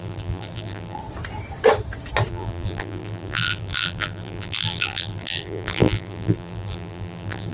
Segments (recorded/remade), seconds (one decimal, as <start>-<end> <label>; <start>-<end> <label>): 0.0-1.0 remade; 1.0-2.3 recorded; 2.3-7.5 remade